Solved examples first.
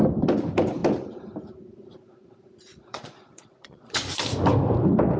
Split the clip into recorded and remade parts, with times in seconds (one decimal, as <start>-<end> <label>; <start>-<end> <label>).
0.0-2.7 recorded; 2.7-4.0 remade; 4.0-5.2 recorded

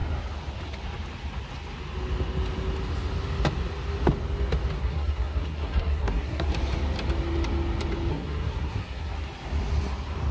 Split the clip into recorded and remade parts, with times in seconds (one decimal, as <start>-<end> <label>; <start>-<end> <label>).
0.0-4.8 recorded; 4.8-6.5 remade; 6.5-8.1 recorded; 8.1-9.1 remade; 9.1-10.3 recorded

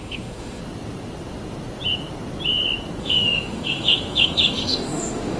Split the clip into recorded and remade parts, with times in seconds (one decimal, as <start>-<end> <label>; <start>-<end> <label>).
0.0-0.6 remade; 0.6-3.0 recorded; 3.0-5.4 remade